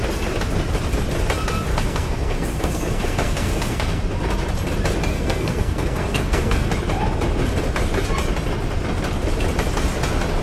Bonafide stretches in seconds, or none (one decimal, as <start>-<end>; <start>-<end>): 0.0-1.7; 4.0-5.1; 6.7-10.4

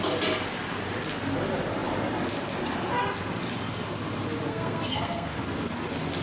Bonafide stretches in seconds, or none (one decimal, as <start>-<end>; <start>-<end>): 0.0-4.5; 5.4-6.2

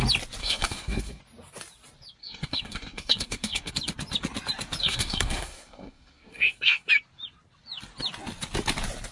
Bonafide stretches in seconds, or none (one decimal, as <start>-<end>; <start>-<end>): 0.0-0.4; 1.2-2.2; 3.7-4.8; 6.9-9.1

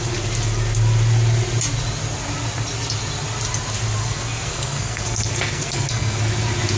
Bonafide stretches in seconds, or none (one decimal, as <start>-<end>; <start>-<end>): 0.0-4.0; 6.2-6.8

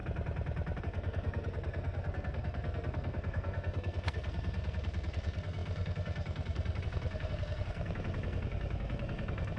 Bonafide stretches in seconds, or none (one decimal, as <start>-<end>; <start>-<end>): 0.0-0.8

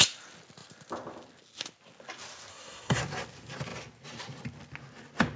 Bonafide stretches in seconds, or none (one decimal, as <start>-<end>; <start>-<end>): 0.0-2.5; 3.0-5.4

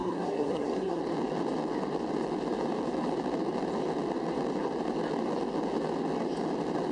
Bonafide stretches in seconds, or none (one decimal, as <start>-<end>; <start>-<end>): 1.0-6.9

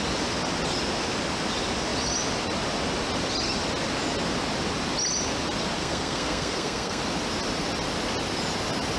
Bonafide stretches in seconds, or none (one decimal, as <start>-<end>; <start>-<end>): 0.0-5.8; 7.0-9.0